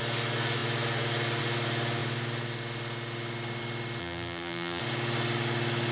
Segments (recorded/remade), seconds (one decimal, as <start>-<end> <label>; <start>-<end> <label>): 0.0-4.0 recorded; 4.0-4.8 remade; 4.8-5.9 recorded